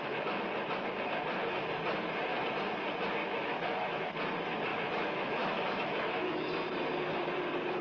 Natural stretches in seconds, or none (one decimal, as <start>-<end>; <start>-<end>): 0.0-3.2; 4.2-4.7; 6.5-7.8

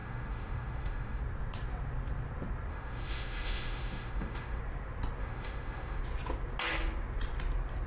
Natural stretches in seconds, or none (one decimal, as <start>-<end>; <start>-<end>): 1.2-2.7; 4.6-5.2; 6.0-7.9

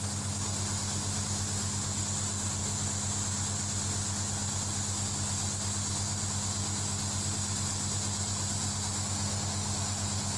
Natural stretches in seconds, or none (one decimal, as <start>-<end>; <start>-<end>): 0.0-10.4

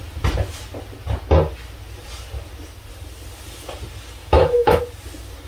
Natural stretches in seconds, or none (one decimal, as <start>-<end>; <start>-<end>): 0.0-4.2; 4.8-5.5